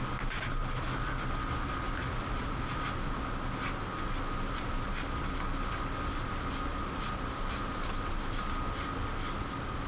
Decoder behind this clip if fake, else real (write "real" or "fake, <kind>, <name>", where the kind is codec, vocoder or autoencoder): real